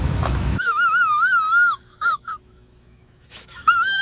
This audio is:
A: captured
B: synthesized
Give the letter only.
B